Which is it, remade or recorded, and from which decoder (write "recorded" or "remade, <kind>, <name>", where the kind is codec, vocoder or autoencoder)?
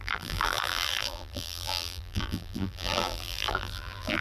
remade, vocoder, BigVGAN v2